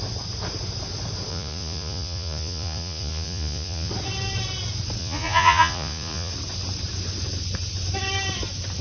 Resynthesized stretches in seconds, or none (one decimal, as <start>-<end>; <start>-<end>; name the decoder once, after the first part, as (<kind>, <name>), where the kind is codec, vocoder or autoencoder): 1.3-3.9 (vocoder, Vocos); 5.0-6.3